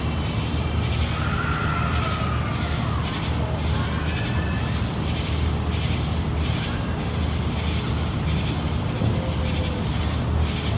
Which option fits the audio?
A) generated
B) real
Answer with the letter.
B